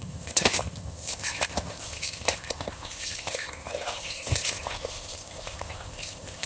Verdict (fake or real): fake